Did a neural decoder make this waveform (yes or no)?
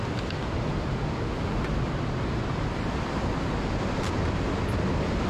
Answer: no